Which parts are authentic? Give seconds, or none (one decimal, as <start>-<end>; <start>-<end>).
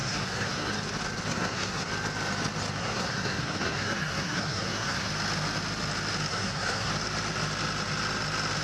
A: 0.7-1.3; 1.9-2.8; 5.1-6.3; 6.9-8.6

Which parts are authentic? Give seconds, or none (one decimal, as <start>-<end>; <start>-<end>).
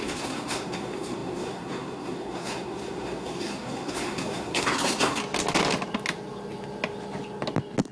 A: 5.2-7.9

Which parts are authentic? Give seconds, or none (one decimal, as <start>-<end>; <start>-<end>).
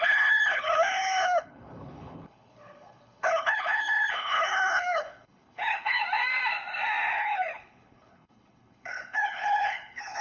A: 6.0-7.1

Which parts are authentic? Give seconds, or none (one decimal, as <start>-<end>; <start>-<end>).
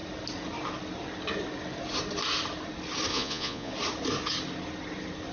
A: 0.0-3.1; 3.7-5.3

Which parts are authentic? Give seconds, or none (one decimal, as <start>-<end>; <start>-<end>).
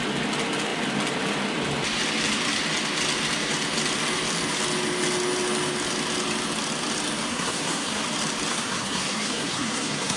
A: 0.0-7.3; 8.0-8.5